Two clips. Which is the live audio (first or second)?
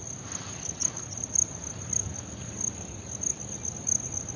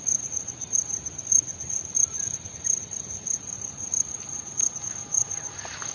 first